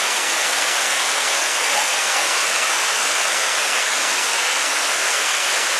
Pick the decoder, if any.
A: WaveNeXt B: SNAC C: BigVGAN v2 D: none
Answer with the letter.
B